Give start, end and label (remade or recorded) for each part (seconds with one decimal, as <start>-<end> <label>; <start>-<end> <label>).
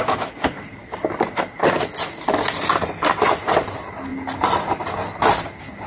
0.0-5.9 recorded